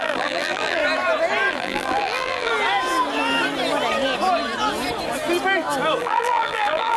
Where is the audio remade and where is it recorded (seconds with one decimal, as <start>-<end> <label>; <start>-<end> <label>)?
0.0-0.8 remade; 0.8-1.5 recorded; 1.5-2.5 remade; 2.5-6.0 recorded; 6.0-7.0 remade

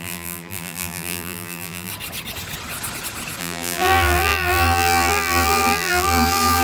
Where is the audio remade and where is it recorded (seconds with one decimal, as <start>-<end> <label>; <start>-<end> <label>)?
0.0-1.9 remade; 1.9-3.4 recorded; 3.4-6.6 remade

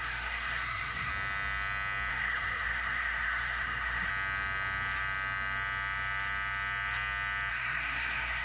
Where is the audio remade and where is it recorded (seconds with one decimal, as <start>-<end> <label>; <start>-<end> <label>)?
0.0-1.1 remade; 1.1-2.1 recorded; 2.1-4.1 remade; 4.1-7.5 recorded; 7.5-8.4 remade

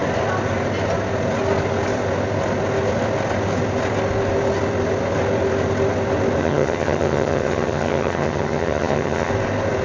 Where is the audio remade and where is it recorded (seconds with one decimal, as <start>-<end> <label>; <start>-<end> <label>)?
0.0-6.4 recorded; 6.4-9.3 remade; 9.3-9.8 recorded